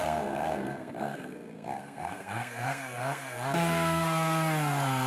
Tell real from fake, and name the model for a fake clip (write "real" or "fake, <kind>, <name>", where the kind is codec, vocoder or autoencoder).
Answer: fake, codec, SNAC